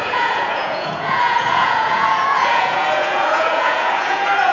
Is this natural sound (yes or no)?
no